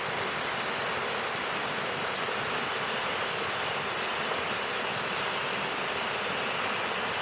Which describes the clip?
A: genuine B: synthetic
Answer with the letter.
A